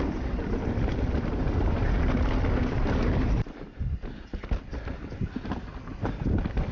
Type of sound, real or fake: real